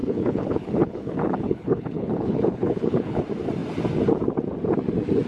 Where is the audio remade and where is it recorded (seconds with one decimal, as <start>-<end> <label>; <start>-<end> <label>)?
0.0-3.2 remade; 3.2-5.3 recorded